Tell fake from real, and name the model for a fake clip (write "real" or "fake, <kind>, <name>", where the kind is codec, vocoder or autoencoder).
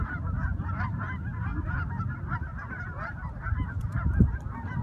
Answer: real